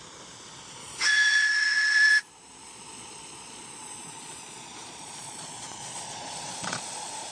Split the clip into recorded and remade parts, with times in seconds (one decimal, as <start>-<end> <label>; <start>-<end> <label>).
0.0-0.8 recorded; 0.8-2.1 remade; 2.1-2.6 recorded; 2.6-7.3 remade